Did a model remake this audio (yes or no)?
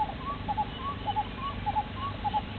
no